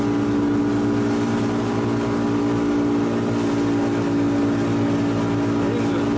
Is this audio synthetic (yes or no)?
no